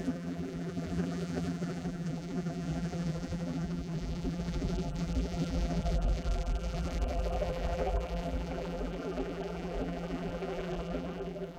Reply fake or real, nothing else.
fake